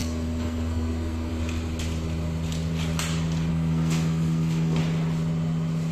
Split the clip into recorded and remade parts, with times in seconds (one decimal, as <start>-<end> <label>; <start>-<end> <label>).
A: 0.0-1.3 remade; 1.3-3.5 recorded; 3.5-4.8 remade; 4.8-5.9 recorded